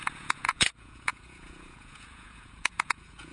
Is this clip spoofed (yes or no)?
yes